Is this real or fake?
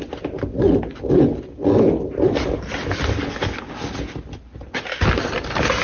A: real